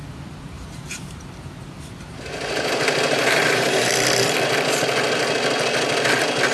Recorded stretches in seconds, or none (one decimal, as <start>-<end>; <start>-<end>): 3.9-6.5